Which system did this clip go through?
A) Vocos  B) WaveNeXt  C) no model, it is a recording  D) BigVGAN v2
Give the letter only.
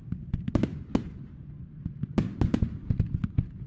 C